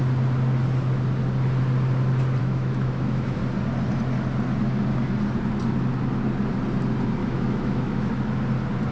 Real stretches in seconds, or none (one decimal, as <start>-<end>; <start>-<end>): 0.0-2.4; 3.4-7.2; 8.1-8.9